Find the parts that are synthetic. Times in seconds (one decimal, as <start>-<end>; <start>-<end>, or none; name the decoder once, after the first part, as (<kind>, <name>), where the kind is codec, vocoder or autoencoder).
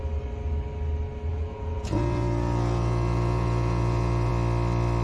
1.3-4.3 (vocoder, Vocos)